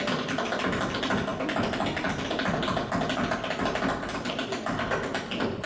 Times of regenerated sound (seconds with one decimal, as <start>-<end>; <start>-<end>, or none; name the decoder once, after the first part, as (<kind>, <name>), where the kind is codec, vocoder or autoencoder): none